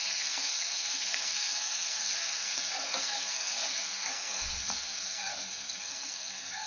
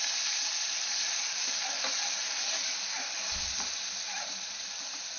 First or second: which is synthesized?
first